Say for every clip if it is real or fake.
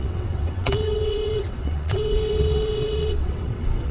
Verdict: fake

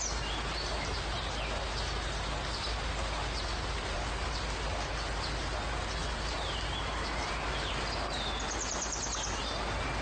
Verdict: real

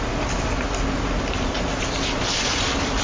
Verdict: real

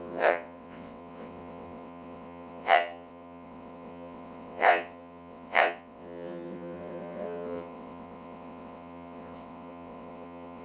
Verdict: fake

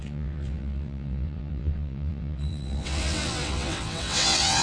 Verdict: fake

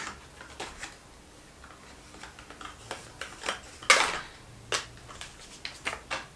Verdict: real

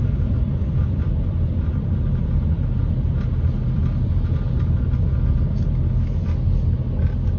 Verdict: real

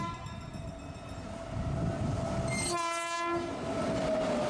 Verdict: real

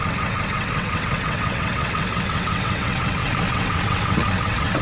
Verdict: fake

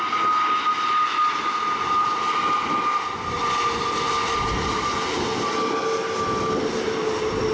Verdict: real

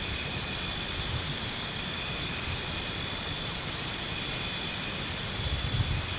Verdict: real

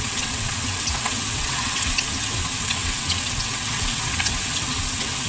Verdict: fake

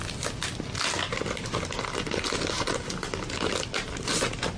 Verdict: real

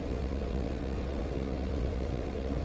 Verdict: fake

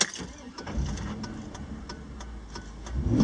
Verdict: real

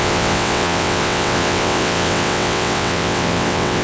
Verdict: fake